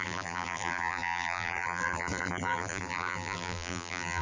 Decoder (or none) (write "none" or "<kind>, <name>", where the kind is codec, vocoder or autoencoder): vocoder, BigVGAN v2